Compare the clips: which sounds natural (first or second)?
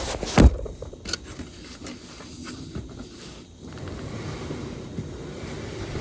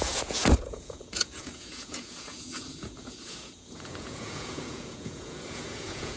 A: first